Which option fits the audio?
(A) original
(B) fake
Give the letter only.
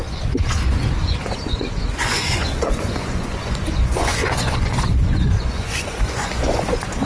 B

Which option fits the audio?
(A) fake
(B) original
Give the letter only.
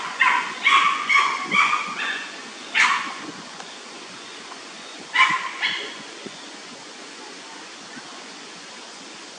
A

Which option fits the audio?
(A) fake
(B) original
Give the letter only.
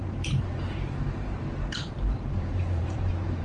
A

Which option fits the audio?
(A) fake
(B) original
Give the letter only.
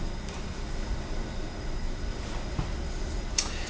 B